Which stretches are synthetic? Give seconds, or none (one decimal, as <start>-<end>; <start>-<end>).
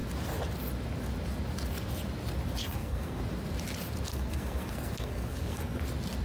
2.6-3.2; 4.1-5.8